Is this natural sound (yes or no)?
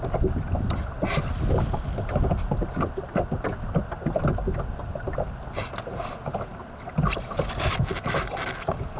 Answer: yes